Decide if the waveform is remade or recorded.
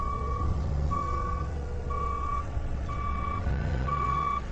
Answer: remade